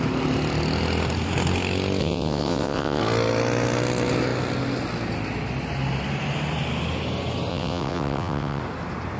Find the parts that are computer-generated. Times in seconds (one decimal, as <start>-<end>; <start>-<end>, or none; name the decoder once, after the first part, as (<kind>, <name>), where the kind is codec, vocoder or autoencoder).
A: 2.0-3.0 (vocoder, WaveNeXt); 7.5-8.6